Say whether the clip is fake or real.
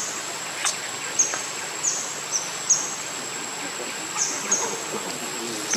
real